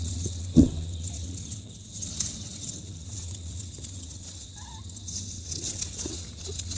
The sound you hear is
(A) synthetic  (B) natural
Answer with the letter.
A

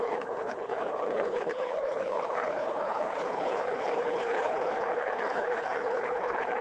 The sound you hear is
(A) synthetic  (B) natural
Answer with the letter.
A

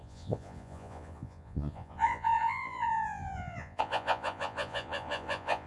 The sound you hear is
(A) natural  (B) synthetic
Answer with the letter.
B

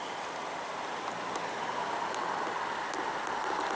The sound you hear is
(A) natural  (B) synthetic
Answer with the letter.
A